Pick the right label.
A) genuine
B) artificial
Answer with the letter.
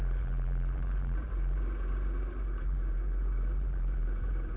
B